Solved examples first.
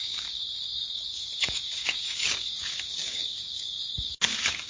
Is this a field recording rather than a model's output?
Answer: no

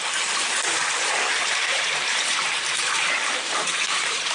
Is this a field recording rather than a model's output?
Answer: no